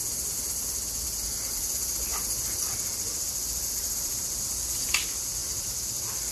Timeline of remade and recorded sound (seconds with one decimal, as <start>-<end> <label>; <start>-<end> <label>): 0.0-6.3 recorded